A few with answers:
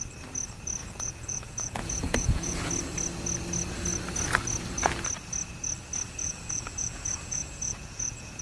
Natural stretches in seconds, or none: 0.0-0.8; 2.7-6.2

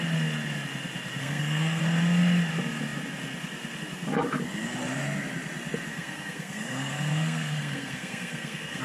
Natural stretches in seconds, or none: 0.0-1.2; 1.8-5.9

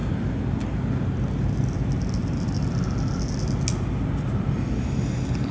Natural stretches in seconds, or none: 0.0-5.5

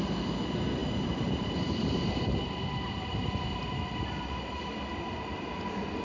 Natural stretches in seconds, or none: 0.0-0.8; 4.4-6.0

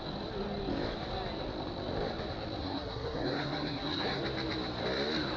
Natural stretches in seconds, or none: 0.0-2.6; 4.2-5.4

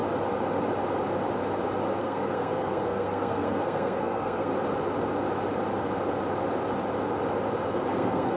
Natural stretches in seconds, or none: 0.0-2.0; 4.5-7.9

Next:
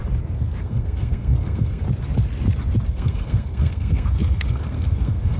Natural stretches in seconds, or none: 0.0-0.6; 1.8-2.9